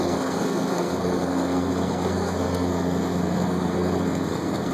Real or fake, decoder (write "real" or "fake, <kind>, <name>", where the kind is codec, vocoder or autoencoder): fake, codec, SNAC